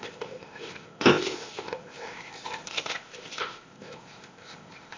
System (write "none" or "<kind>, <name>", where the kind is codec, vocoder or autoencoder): codec, ZipCodec